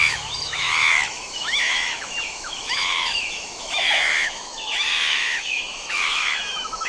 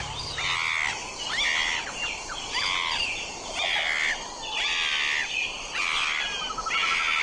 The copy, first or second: first